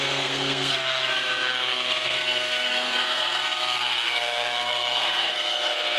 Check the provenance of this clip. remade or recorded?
remade